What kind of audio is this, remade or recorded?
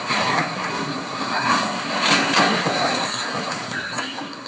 remade